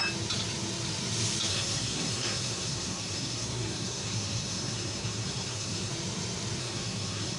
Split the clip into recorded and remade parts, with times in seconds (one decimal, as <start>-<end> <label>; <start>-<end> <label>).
0.0-1.5 recorded; 1.5-5.9 remade; 5.9-6.6 recorded; 6.6-7.4 remade